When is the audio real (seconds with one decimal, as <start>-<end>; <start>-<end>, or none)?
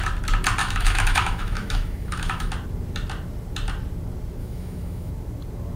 0.0-0.6; 2.5-4.4; 5.1-5.8